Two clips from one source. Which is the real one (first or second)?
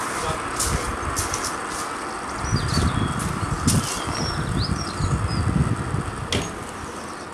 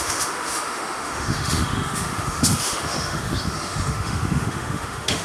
first